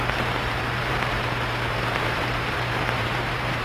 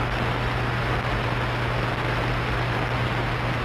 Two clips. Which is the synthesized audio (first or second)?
first